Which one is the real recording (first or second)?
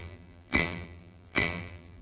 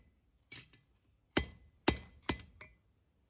second